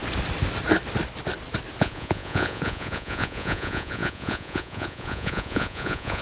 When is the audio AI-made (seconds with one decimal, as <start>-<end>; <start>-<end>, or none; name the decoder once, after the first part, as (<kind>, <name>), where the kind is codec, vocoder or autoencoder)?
1.8-6.2 (vocoder, Vocos)